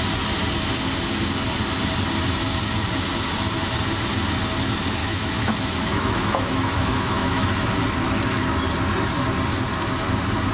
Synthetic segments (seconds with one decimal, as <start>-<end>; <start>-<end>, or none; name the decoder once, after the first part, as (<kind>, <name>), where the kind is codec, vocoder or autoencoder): 5.0-7.7 (autoencoder, DAC-VAE)